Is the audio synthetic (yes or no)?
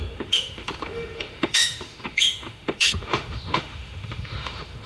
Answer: yes